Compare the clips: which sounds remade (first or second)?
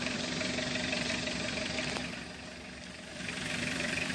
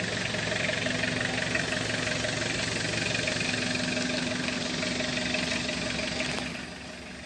first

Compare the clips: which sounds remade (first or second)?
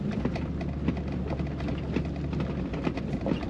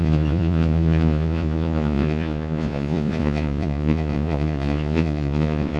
second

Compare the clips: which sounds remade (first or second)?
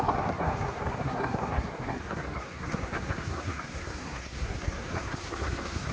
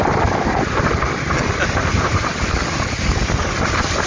first